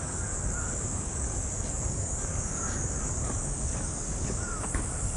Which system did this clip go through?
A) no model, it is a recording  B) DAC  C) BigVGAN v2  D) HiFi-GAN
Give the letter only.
B